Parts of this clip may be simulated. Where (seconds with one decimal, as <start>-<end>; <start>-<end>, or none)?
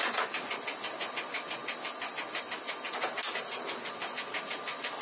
none